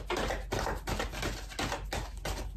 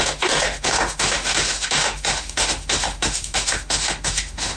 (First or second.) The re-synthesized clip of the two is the second